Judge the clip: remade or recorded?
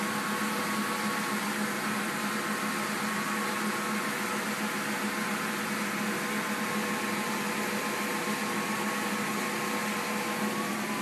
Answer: recorded